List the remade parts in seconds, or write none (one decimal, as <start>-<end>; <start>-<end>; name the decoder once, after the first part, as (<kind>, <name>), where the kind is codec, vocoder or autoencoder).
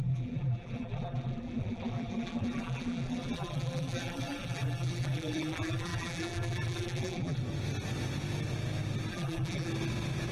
0.0-7.4 (vocoder, BigVGAN v2); 9.1-9.7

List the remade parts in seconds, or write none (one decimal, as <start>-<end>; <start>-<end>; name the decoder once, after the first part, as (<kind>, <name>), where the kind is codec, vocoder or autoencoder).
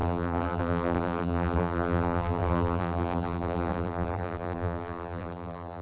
0.0-5.8 (vocoder, BigVGAN v2)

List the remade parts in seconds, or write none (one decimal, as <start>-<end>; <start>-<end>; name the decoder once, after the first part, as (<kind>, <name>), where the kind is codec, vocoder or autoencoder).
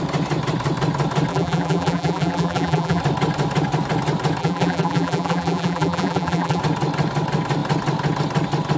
1.3-3.0 (vocoder, BigVGAN v2); 4.4-6.6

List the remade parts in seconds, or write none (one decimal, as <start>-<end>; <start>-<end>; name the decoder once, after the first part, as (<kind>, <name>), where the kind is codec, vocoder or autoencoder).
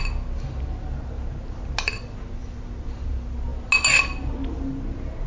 2.4-3.1 (vocoder, BigVGAN v2)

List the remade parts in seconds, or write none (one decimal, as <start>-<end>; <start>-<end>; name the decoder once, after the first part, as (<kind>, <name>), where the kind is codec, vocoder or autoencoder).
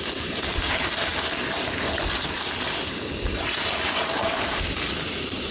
0.0-1.1 (vocoder, BigVGAN v2); 4.4-5.5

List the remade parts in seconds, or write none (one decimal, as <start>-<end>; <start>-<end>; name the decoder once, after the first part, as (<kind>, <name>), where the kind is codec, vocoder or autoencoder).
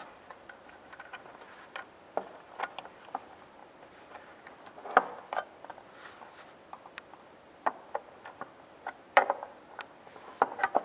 0.0-0.7 (vocoder, BigVGAN v2); 3.6-4.2; 5.7-9.8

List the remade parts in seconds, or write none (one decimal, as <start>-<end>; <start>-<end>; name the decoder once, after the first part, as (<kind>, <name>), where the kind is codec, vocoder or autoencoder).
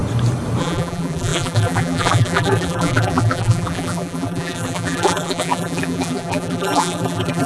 0.6-7.5 (vocoder, BigVGAN v2)